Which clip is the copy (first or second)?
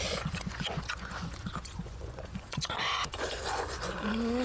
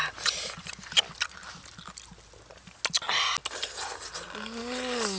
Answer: first